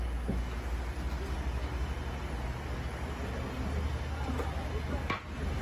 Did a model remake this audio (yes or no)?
no